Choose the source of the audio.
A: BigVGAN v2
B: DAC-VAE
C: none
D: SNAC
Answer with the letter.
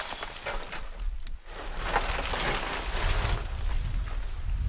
C